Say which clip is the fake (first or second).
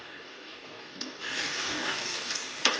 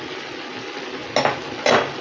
first